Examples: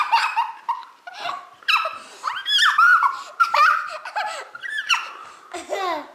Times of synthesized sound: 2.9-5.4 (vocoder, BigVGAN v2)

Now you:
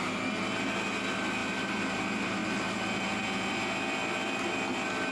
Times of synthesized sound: 1.4-2.0 (vocoder, BigVGAN v2)

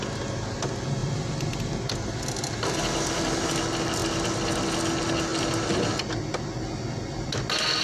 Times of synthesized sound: 1.0-1.9 (vocoder, BigVGAN v2); 5.3-6.1

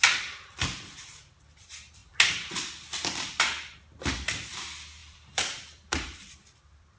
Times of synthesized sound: 5.0-7.0 (vocoder, BigVGAN v2)

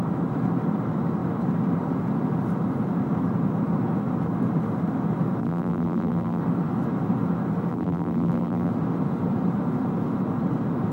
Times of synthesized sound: 5.4-6.4 (vocoder, BigVGAN v2); 7.7-8.7

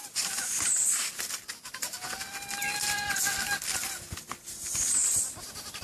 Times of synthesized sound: none